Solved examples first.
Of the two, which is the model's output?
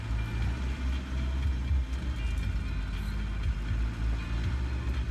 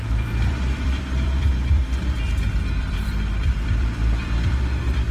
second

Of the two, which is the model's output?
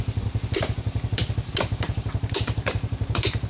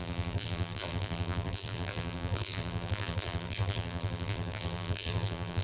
second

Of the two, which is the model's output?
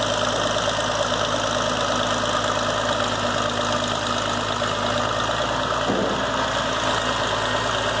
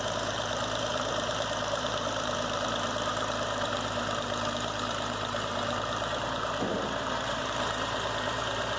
second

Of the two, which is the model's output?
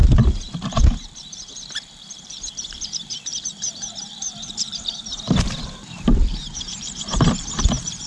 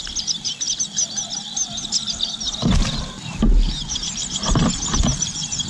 first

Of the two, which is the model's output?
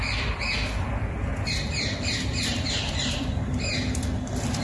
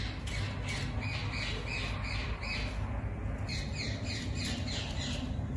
first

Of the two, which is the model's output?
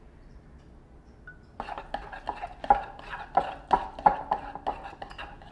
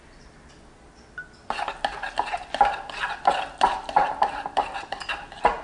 second